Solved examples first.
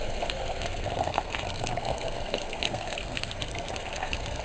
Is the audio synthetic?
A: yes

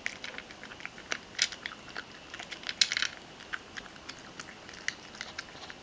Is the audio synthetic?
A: no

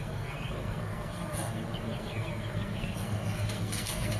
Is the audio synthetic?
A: yes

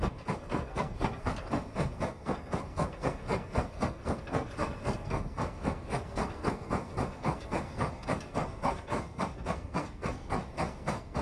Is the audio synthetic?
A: yes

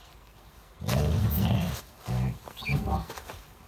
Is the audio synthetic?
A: yes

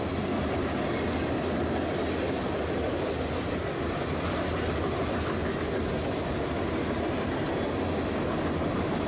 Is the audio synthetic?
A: no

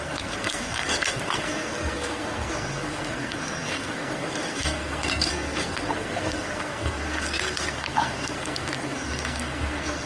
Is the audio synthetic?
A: yes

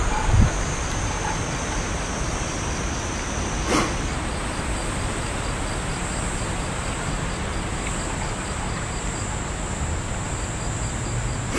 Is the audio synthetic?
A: no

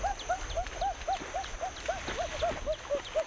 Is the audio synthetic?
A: no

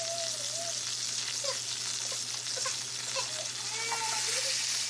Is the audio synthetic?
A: no